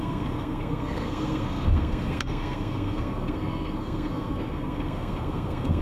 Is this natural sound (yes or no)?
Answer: no